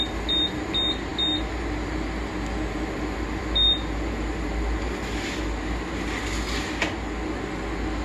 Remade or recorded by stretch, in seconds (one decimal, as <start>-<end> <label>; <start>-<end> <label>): 0.0-8.0 recorded